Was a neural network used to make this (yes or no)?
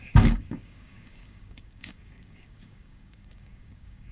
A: yes